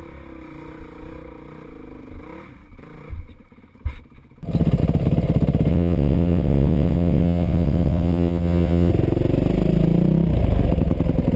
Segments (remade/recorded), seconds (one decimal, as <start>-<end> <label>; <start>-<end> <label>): 0.0-5.7 recorded; 5.7-8.9 remade; 8.9-11.4 recorded